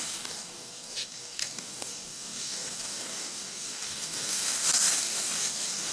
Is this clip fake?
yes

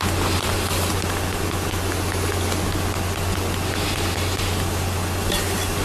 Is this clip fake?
no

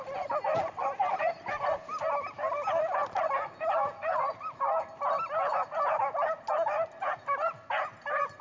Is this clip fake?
no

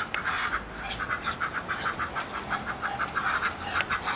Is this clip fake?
no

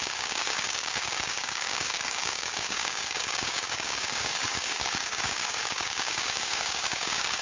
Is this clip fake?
yes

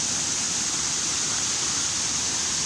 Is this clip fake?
no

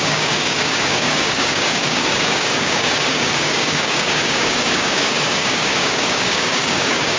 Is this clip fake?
yes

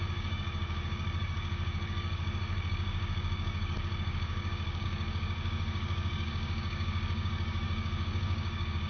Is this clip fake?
yes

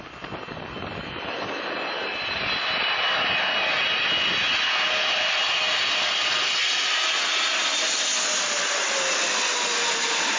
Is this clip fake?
no